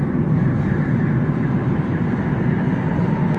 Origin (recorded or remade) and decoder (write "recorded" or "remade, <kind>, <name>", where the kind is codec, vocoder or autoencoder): recorded